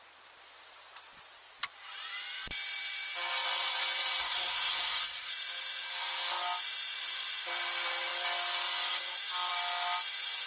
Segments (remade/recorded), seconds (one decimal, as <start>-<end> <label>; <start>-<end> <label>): 0.0-4.2 recorded; 4.2-5.3 remade; 5.3-10.5 recorded